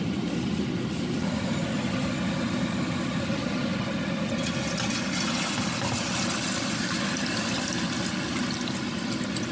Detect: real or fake real